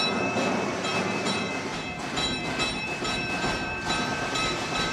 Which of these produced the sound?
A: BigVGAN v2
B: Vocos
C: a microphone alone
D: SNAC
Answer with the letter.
A